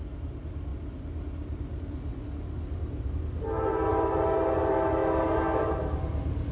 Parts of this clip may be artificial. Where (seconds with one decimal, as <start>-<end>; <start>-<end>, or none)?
3.9-6.0